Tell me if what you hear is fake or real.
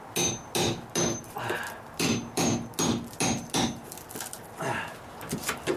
real